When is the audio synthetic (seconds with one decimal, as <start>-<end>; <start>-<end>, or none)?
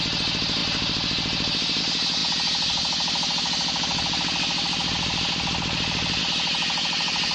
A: none